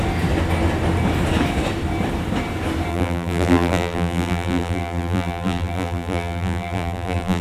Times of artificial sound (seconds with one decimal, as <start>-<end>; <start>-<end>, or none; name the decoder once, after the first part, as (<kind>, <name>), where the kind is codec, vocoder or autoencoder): 2.9-7.4 (vocoder, BigVGAN v2)